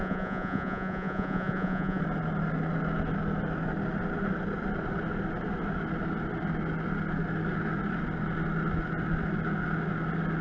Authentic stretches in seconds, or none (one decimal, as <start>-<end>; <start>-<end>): 2.0-10.4